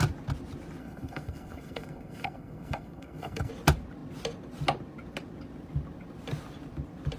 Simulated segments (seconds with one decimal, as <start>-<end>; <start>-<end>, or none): 0.8-3.5